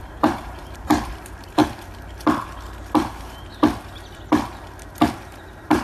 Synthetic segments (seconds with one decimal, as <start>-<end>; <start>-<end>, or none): 0.0-1.6; 5.1-5.8